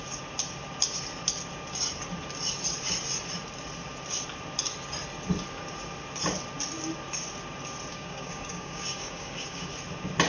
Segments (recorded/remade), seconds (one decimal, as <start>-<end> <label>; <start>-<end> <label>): 0.0-7.9 recorded; 7.9-9.7 remade; 9.7-10.3 recorded